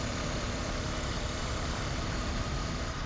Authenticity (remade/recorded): remade